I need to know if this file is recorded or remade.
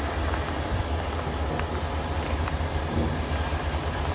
recorded